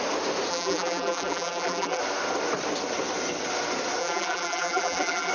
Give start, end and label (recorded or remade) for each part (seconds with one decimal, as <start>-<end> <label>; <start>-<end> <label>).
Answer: 0.0-0.5 recorded; 0.5-2.0 remade; 2.0-4.0 recorded; 4.0-5.3 remade